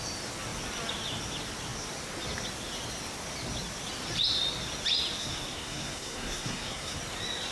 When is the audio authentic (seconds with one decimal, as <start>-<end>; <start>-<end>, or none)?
0.0-5.2; 7.0-7.5